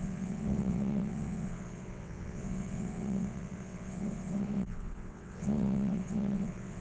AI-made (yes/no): yes